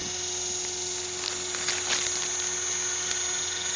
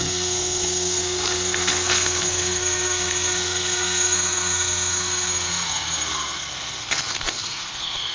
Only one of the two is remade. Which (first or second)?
second